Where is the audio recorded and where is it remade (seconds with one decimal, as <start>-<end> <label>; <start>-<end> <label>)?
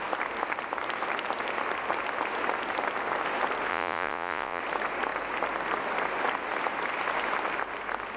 0.0-3.7 recorded; 3.7-4.6 remade; 4.6-8.2 recorded